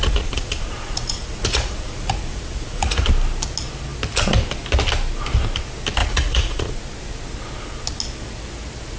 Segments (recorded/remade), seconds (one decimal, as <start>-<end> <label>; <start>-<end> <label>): 0.0-3.1 remade; 3.1-6.0 recorded; 6.0-6.8 remade; 6.8-9.0 recorded